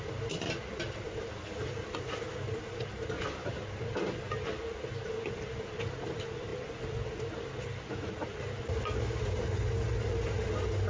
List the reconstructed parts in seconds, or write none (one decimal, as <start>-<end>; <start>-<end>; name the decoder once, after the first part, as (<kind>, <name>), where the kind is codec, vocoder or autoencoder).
none